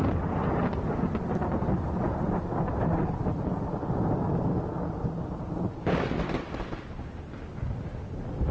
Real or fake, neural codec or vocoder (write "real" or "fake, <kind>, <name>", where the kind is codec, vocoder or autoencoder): real